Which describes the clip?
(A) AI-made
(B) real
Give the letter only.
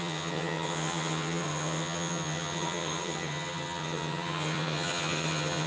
A